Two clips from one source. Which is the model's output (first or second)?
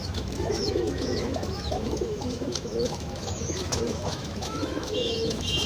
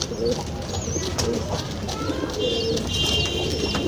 first